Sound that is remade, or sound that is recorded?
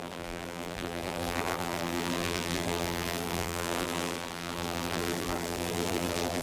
remade